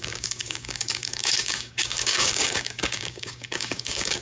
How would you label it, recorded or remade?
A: remade